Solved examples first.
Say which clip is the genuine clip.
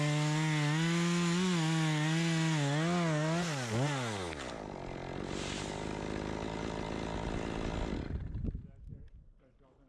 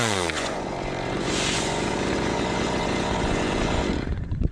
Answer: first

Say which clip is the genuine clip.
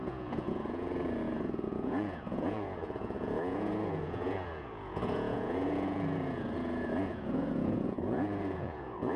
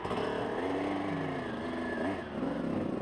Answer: second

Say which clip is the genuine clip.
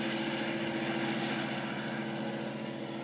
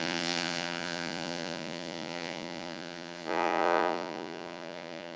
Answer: first